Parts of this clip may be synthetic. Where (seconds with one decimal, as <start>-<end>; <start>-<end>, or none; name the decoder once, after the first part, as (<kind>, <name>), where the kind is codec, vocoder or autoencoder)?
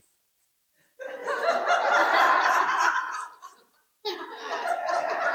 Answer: 0.0-5.3 (vocoder, BigVGAN v2)